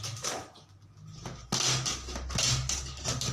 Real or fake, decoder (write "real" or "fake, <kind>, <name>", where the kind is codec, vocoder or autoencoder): real